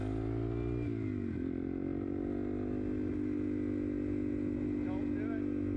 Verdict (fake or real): real